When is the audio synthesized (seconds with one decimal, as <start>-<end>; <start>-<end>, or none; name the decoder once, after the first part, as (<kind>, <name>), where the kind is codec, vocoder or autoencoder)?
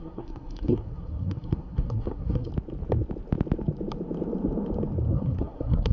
0.0-2.5 (codec, SNAC); 5.1-5.9